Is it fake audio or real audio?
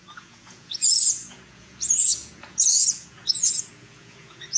fake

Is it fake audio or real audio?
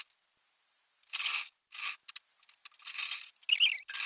real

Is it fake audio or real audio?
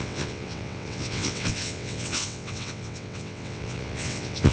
fake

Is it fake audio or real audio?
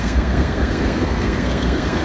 fake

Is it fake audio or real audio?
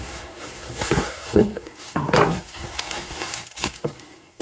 fake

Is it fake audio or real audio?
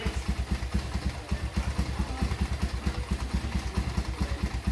real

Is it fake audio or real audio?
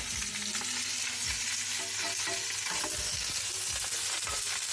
real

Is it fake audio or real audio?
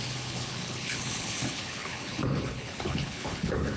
fake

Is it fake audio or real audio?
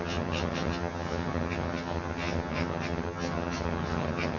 fake